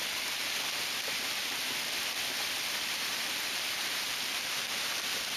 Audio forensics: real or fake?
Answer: fake